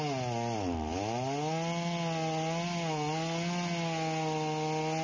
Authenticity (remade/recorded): recorded